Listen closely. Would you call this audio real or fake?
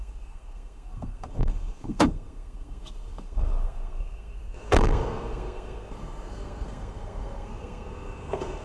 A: fake